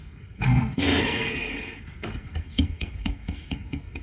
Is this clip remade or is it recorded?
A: remade